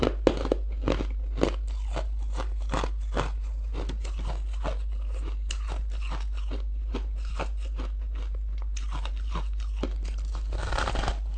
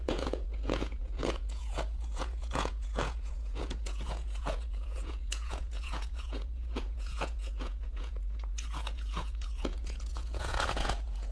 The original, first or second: first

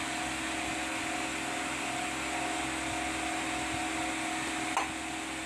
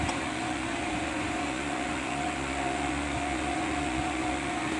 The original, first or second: first